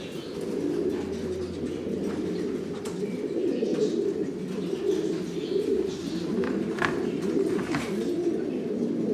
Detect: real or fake real